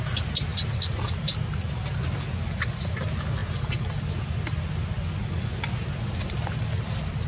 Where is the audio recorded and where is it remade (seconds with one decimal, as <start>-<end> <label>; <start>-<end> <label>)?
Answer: 0.0-7.3 recorded